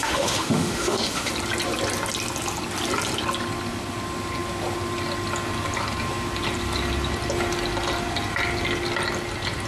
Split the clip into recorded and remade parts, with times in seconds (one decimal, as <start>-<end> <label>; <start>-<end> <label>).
0.0-1.3 remade; 1.3-9.7 recorded